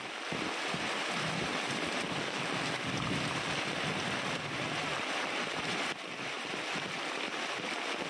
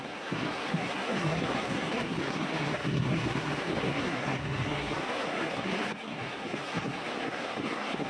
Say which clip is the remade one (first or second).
second